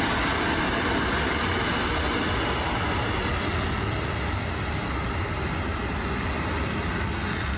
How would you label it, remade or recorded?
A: recorded